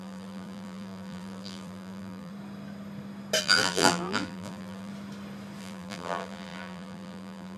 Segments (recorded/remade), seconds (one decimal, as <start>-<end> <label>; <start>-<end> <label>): 0.0-2.3 remade; 2.3-3.4 recorded; 3.4-4.9 remade; 4.9-5.6 recorded; 5.6-7.6 remade